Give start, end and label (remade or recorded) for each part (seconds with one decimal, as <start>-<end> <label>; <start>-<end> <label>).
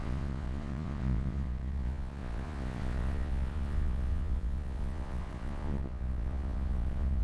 0.0-7.2 remade